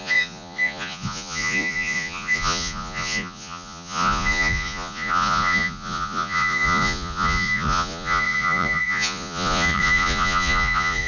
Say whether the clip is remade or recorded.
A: remade